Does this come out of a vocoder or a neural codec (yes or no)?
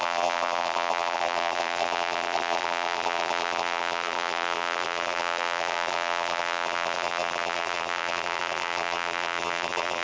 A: yes